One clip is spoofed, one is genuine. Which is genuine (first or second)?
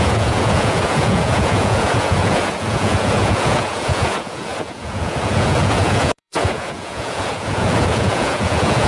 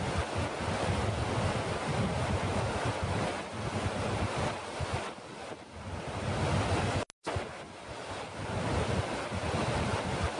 second